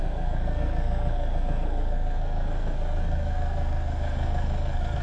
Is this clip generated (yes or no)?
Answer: yes